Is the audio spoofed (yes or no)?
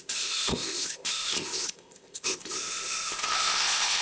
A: yes